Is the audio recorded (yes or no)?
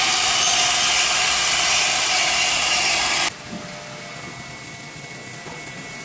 yes